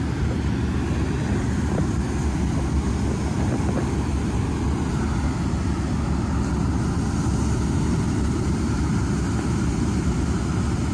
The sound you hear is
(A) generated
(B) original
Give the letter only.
B